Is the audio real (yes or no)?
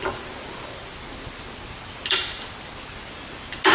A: yes